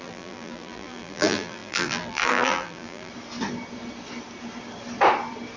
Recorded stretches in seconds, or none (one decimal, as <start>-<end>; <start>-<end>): 3.1-5.6